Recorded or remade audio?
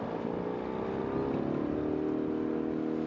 recorded